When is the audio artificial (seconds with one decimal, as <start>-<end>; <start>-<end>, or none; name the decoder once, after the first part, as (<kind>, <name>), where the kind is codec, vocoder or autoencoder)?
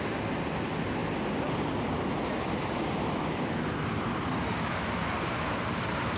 none